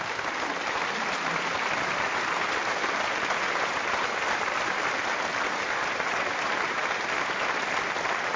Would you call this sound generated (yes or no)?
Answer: no